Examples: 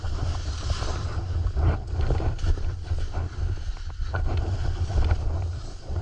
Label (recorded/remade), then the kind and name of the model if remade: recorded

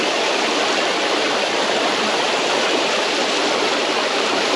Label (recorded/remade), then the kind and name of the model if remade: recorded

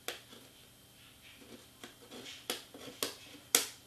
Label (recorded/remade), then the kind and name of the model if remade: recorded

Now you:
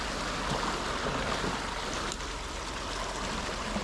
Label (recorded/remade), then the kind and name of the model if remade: recorded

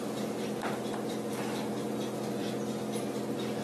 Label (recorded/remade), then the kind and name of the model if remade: recorded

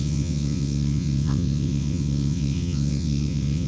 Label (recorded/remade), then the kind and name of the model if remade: remade, vocoder, WaveNeXt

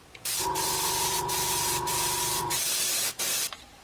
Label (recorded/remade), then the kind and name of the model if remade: remade, vocoder, BigVGAN v2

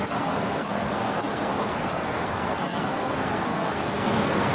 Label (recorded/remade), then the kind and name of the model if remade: remade, codec, SNAC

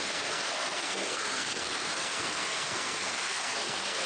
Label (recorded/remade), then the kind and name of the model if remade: remade, codec, SNAC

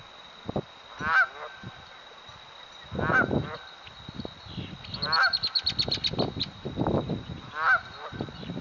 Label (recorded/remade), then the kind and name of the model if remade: recorded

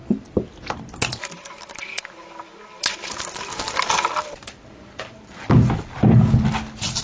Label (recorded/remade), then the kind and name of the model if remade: recorded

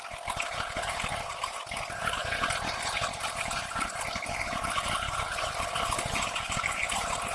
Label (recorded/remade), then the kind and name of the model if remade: recorded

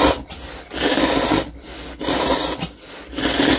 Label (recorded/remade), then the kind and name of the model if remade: recorded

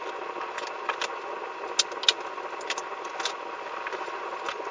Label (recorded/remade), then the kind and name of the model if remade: recorded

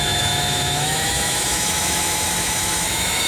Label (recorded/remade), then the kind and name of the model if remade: remade, autoencoder, DAC-VAE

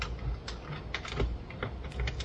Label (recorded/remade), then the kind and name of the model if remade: recorded